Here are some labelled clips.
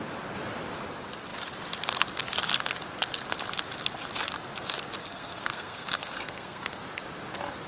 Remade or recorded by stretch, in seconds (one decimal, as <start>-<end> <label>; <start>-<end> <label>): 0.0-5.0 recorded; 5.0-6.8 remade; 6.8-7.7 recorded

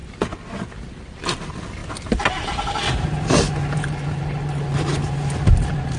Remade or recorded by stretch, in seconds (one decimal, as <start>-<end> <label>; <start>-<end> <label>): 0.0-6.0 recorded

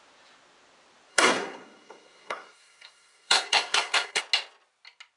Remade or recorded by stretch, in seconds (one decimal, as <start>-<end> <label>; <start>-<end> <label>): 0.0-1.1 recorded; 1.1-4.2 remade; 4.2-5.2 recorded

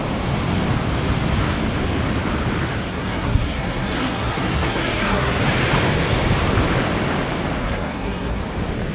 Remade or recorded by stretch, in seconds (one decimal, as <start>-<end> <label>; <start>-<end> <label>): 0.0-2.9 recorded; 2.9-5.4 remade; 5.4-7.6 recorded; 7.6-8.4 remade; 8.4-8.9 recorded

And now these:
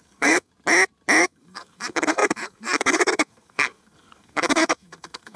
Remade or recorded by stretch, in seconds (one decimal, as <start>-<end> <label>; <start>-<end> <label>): 0.0-0.5 remade; 0.5-1.2 recorded; 1.2-5.4 remade

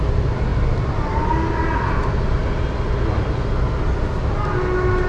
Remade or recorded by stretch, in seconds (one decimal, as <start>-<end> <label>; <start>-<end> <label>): 0.0-5.1 recorded